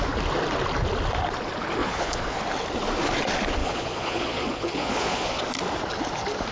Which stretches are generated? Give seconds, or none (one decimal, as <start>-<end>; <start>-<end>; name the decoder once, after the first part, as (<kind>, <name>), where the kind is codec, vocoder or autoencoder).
1.8-2.4 (vocoder, Vocos); 3.6-5.4